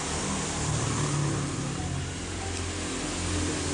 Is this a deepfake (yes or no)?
no